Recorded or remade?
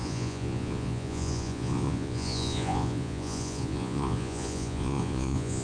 remade